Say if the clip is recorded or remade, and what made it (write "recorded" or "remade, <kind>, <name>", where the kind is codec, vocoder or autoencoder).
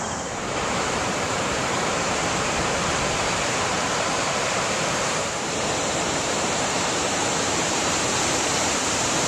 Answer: remade, vocoder, BigVGAN v2